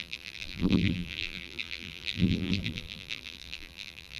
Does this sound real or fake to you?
fake